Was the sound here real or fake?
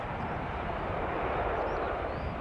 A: fake